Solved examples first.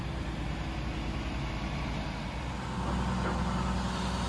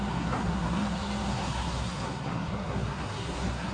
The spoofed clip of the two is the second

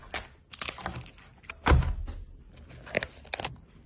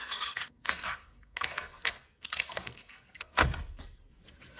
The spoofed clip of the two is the second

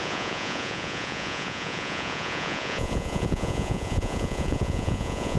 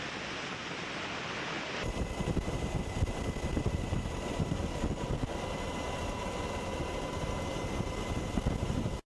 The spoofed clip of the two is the first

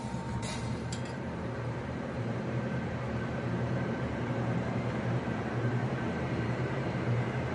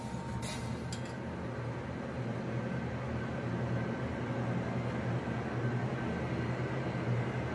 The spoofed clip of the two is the first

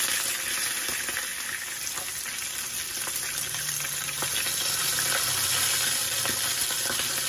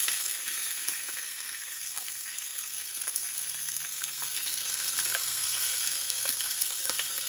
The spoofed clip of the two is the second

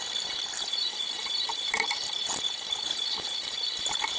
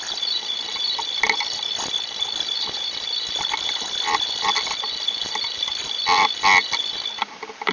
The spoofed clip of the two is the first